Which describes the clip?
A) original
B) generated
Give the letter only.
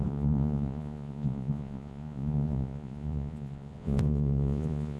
B